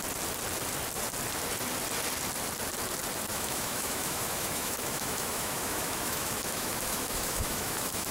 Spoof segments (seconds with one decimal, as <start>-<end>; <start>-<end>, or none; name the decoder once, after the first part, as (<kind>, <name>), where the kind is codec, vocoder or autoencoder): 3.3-8.1 (autoencoder, DAC-VAE)